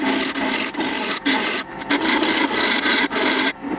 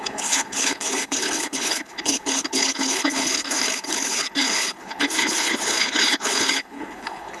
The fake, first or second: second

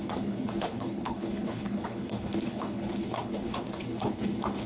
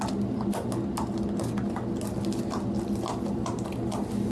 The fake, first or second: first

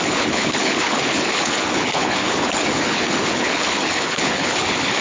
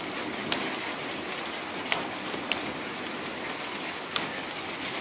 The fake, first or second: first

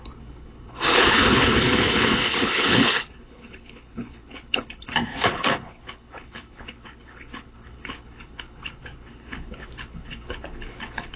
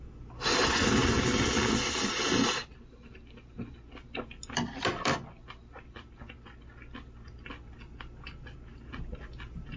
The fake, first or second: first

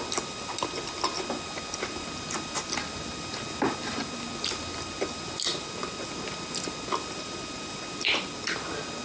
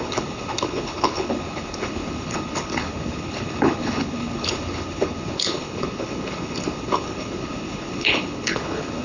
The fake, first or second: second